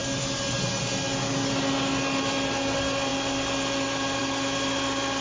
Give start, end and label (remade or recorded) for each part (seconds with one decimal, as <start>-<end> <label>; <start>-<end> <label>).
0.0-5.2 recorded